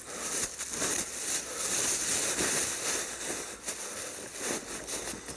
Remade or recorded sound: recorded